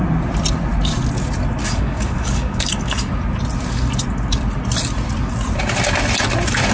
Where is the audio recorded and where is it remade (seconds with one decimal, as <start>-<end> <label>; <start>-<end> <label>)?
0.0-1.6 recorded; 1.6-3.1 remade; 3.1-6.7 recorded